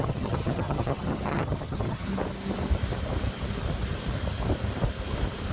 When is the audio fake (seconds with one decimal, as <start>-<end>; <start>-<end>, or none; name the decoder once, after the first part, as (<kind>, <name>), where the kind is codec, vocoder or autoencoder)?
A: 0.0-2.1 (vocoder, HiFi-GAN)